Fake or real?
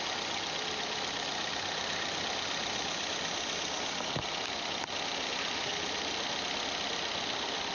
real